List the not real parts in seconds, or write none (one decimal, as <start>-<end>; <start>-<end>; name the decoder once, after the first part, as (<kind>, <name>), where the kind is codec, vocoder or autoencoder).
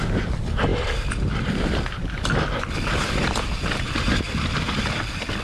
none